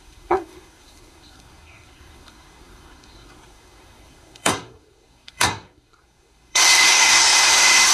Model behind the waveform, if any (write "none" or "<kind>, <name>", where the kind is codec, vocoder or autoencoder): codec, SNAC